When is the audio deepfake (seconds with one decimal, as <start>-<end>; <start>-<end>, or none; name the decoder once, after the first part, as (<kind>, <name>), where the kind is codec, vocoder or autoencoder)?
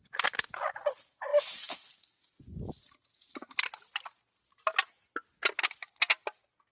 none